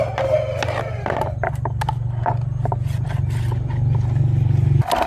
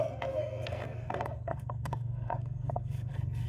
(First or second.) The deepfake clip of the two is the second